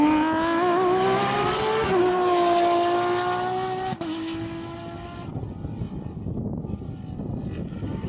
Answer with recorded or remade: recorded